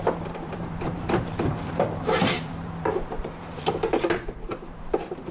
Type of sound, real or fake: fake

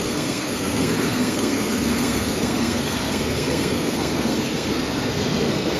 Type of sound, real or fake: fake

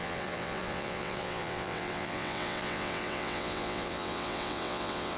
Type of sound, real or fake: fake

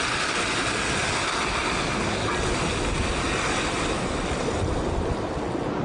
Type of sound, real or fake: real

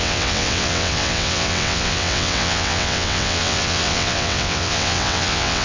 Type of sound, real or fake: fake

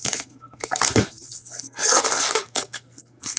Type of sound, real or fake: fake